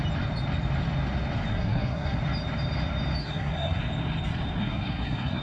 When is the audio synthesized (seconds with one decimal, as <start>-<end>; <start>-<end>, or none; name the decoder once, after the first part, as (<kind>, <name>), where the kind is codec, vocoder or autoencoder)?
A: 1.5-2.2 (codec, SNAC); 3.2-3.8; 4.6-5.4